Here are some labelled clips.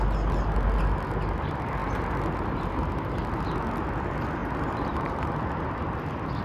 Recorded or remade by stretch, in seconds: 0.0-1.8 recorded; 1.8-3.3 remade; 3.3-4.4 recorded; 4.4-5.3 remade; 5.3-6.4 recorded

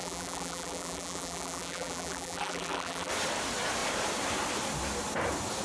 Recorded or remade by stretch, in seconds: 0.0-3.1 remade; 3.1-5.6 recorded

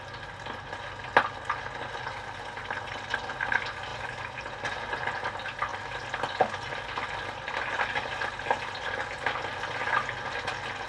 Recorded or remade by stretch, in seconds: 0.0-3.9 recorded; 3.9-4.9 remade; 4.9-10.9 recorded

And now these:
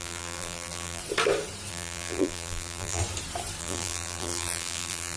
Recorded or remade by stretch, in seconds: 0.0-1.0 remade; 1.0-1.7 recorded; 1.7-3.0 remade; 3.0-3.6 recorded; 3.6-5.2 remade